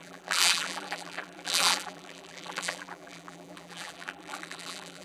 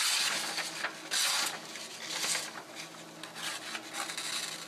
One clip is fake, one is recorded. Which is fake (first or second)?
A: first